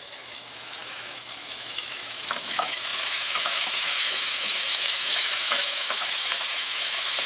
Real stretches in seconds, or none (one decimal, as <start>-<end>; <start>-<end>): none